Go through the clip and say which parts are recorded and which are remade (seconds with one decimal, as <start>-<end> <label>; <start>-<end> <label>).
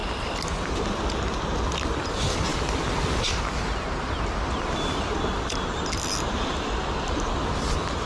0.0-8.1 recorded